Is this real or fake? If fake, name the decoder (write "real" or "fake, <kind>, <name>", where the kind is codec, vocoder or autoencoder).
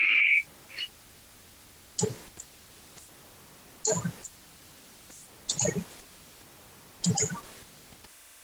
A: real